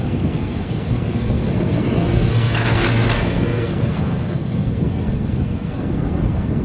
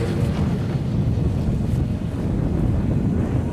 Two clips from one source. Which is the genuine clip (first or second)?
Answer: second